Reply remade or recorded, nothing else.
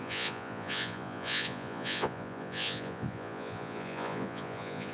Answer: remade